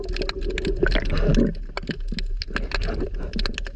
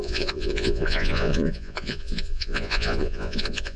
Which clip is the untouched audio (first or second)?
first